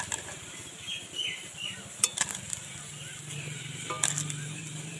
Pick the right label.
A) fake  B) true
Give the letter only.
B